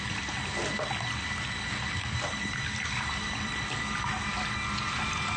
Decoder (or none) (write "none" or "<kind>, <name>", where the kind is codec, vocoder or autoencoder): none